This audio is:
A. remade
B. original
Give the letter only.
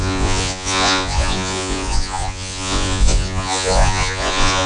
A